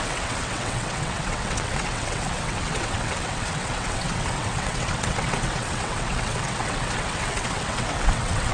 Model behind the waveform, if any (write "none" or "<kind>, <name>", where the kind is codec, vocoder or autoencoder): vocoder, WaveNeXt